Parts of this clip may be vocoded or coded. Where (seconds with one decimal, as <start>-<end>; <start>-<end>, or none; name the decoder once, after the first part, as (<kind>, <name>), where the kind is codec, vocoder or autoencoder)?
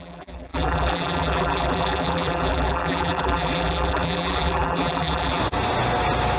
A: 0.0-5.4 (vocoder, BigVGAN v2)